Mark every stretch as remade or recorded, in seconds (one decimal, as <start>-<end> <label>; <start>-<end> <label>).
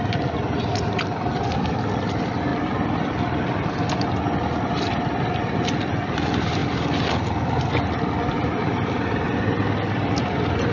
0.0-10.7 recorded